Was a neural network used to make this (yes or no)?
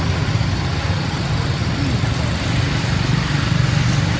no